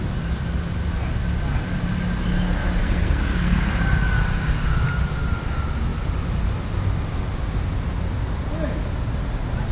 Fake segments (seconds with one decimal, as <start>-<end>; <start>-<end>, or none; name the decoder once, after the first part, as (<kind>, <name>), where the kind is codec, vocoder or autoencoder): 2.8-3.7 (codec, SNAC)

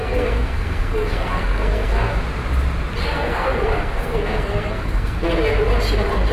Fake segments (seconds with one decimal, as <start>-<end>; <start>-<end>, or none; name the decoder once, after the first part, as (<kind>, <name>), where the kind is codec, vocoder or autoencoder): 0.0-2.1 (codec, SNAC); 3.0-5.3

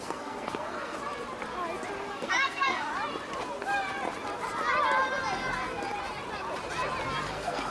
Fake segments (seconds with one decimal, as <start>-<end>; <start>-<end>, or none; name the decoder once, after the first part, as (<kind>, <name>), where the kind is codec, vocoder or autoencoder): 0.0-1.0 (codec, SNAC); 2.1-2.9; 7.3-7.7